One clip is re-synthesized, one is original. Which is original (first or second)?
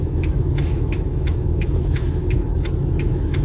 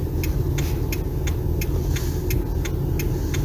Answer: second